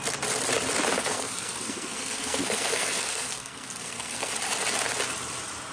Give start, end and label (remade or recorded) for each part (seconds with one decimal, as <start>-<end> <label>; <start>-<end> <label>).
0.0-0.9 recorded; 0.9-4.3 remade; 4.3-5.7 recorded